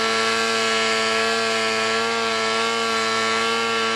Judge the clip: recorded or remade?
recorded